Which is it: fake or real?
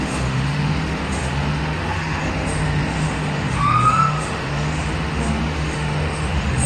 fake